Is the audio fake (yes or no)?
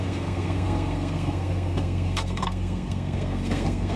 yes